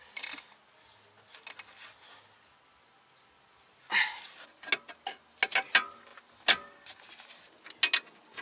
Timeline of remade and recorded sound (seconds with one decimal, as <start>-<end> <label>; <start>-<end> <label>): 0.0-8.4 recorded